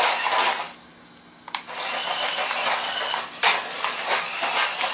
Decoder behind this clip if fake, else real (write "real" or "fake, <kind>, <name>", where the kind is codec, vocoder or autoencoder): real